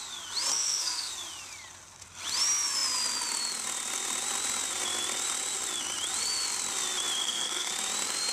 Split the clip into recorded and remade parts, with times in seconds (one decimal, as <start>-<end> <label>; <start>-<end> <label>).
0.0-0.5 recorded; 0.5-1.1 remade; 1.1-7.2 recorded; 7.2-7.7 remade; 7.7-8.3 recorded